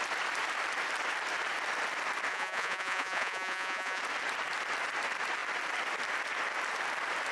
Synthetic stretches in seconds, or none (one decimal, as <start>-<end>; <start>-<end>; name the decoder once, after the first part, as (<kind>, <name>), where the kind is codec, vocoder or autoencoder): 2.3-4.0 (vocoder, Vocos)